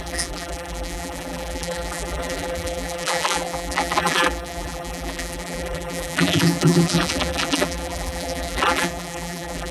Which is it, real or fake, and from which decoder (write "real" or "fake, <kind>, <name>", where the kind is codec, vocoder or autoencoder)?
fake, vocoder, BigVGAN v2